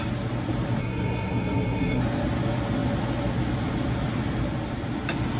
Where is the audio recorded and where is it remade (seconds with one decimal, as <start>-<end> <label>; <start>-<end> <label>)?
0.0-0.8 recorded; 0.8-2.0 remade; 2.0-5.4 recorded